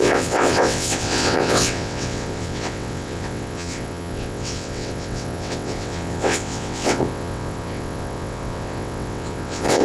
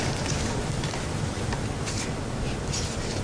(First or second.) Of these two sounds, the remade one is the first